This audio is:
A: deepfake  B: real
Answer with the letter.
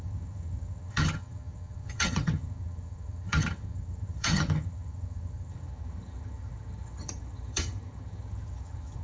A